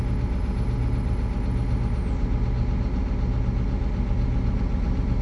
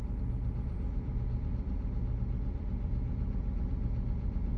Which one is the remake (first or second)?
second